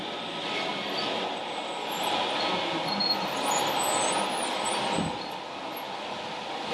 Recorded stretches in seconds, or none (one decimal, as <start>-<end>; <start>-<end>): 0.0-6.7